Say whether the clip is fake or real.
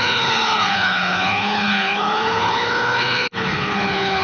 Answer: fake